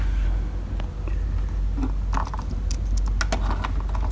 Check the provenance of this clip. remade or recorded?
recorded